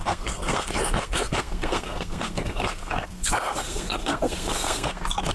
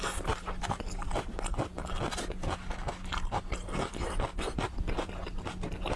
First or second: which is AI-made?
first